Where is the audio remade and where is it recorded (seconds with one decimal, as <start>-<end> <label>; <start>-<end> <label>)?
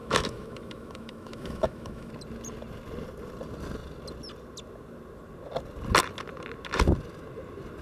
0.0-2.1 remade; 2.1-7.8 recorded